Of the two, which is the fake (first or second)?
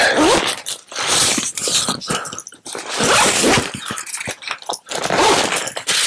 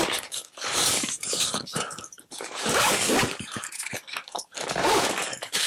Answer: second